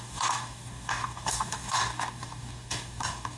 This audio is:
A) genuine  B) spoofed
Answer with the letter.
B